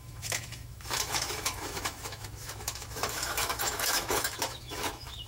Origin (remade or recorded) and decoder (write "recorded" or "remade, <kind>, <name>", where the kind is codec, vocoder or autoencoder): remade, autoencoder, DAC-VAE